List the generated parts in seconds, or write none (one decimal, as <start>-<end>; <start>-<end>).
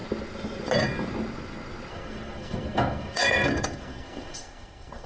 1.9-5.1